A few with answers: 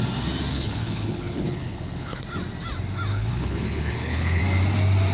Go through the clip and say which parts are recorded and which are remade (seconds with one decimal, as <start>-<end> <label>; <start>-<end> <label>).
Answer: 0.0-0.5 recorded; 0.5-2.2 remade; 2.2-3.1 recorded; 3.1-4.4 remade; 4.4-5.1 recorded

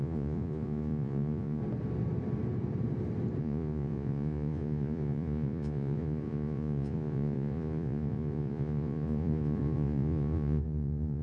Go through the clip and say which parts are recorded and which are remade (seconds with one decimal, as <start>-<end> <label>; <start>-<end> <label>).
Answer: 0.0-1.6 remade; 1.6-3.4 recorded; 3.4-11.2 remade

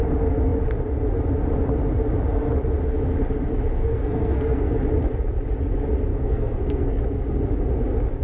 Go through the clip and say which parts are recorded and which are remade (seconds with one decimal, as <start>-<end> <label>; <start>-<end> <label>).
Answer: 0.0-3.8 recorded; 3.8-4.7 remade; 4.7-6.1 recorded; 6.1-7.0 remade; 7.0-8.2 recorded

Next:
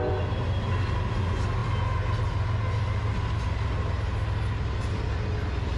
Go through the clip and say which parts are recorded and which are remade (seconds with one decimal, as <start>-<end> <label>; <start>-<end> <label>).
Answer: 0.0-5.8 recorded

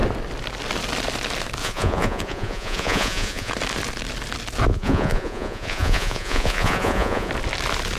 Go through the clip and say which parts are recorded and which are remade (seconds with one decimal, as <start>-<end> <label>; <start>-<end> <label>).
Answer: 0.0-1.6 recorded; 1.6-3.5 remade; 3.5-4.7 recorded; 4.7-7.3 remade; 7.3-8.0 recorded

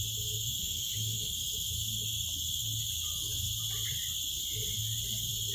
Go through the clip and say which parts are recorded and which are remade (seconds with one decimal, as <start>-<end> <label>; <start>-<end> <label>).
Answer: 0.0-0.6 recorded; 0.6-1.3 remade; 1.3-5.5 recorded